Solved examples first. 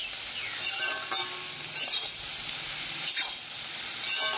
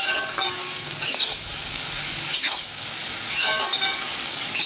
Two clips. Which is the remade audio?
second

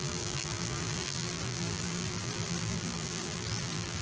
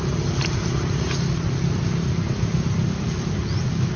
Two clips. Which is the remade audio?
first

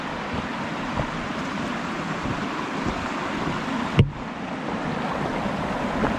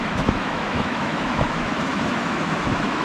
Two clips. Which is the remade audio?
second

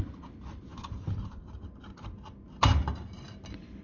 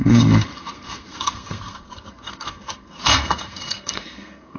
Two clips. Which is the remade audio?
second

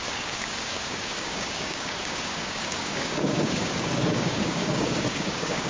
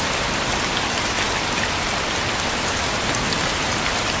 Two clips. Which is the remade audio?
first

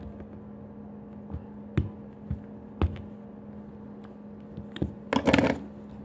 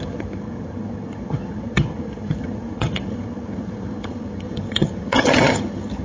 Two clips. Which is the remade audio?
second